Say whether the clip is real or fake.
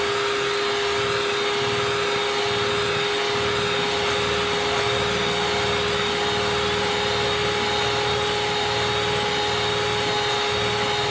real